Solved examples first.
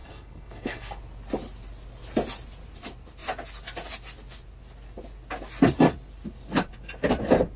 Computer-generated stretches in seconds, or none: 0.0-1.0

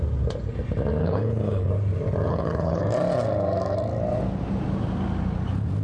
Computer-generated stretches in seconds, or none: 1.0-1.7; 2.3-2.8

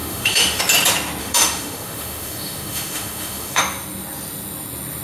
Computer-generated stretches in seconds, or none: 0.0-0.6; 1.2-3.6

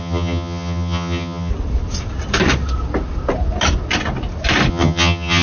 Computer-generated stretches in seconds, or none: 0.0-1.5; 4.7-5.4

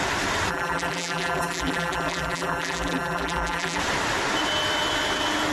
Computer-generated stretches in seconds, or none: 0.5-3.8

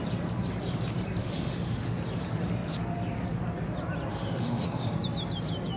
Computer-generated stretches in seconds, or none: 1.2-2.0; 4.1-4.9